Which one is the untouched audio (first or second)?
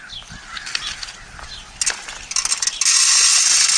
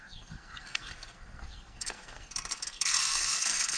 first